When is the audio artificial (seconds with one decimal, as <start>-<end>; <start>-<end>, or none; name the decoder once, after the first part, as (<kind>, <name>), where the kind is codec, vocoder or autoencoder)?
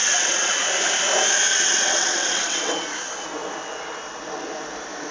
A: 0.0-0.5 (vocoder, WaveNeXt); 1.5-2.7